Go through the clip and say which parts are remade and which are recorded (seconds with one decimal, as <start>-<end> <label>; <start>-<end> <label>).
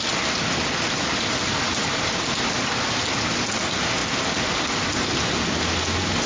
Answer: 0.0-6.3 recorded